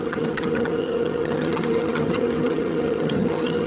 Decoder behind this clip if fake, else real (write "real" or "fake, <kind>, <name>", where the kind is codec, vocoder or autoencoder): fake, vocoder, HiFi-GAN